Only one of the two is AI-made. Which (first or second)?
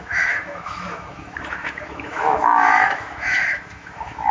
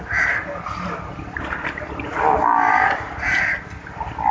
first